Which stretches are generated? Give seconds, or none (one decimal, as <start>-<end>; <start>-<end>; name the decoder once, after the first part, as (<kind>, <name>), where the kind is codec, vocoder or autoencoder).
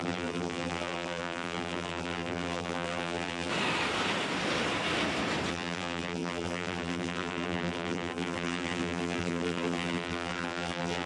0.0-3.5 (vocoder, BigVGAN v2); 5.5-11.1